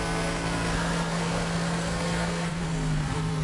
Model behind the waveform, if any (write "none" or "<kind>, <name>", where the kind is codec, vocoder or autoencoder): codec, SNAC